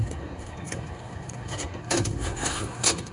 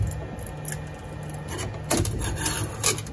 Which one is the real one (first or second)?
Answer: second